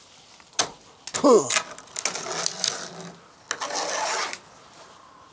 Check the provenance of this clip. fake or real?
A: real